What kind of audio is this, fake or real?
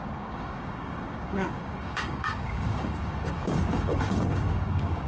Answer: fake